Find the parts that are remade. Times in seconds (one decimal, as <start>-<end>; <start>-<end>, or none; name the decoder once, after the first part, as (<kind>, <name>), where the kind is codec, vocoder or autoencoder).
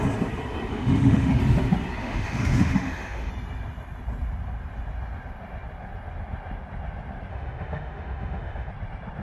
0.7-1.4 (autoencoder, DAC-VAE); 2.0-3.3; 7.3-8.7